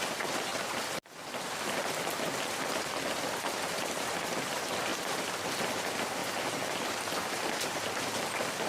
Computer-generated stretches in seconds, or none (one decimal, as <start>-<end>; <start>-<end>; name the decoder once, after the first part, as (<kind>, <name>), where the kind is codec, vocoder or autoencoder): 0.0-0.5 (vocoder, BigVGAN v2); 4.0-4.9; 5.7-6.2